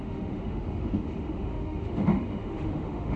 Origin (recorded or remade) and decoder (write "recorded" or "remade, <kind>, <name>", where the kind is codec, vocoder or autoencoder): remade, autoencoder, DAC-VAE